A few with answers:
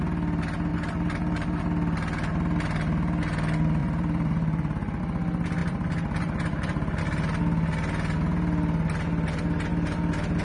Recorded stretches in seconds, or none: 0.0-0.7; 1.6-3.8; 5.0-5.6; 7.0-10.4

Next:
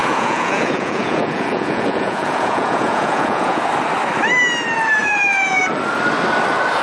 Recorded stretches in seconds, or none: 3.7-5.0; 5.6-6.8

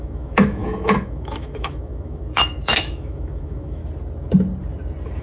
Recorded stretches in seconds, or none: 3.8-5.2

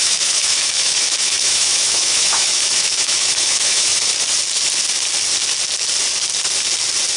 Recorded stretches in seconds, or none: 4.1-7.2

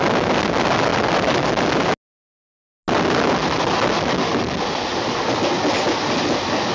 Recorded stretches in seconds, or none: 0.0-6.7